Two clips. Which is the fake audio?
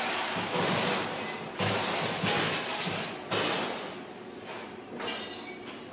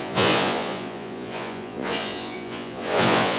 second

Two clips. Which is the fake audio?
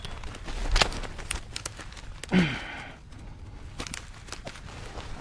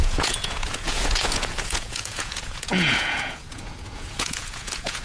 second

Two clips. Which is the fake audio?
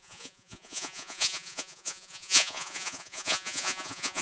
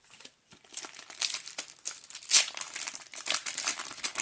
first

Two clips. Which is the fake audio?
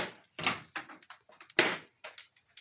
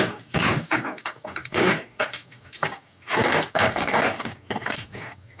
second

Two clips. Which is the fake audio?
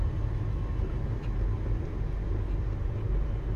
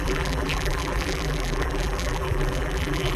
second